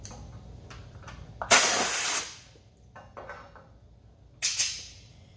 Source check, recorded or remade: recorded